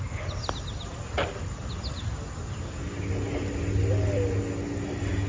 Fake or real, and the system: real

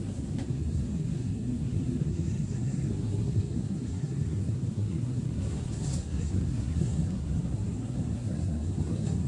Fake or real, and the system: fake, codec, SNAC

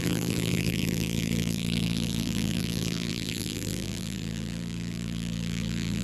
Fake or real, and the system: fake, vocoder, BigVGAN v2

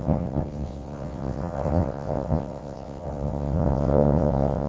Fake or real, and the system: fake, vocoder, WaveNeXt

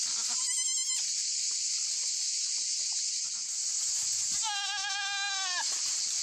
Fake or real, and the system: real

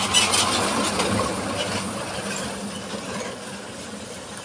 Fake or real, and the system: real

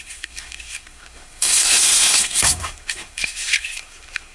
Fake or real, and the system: fake, codec, SNAC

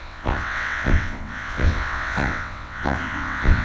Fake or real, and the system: fake, vocoder, WaveNeXt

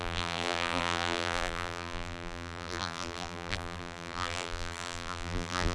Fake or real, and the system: fake, vocoder, BigVGAN v2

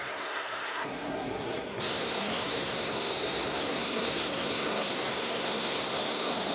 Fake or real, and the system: fake, codec, SNAC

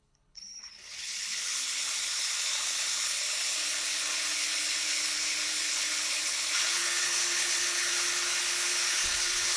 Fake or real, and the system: fake, codec, HILCodec